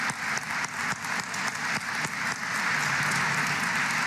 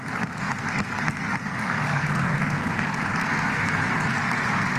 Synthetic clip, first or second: second